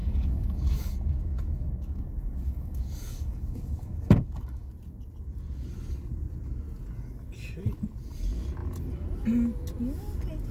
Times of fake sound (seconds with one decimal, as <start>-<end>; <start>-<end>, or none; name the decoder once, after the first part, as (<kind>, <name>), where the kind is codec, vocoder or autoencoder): 0.0-4.7 (codec, DAC)